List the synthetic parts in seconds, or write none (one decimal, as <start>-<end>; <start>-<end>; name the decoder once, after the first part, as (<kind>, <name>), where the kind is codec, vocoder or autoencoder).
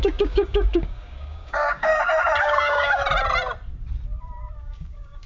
0.0-1.9 (codec, DAC); 2.4-3.0; 4.6-5.3